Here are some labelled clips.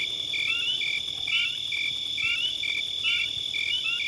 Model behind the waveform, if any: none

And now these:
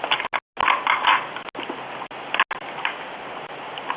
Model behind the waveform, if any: none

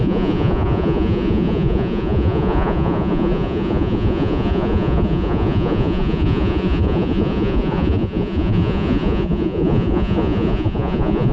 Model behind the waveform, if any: vocoder, Vocos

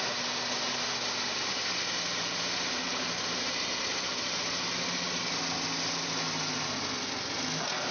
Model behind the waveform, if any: none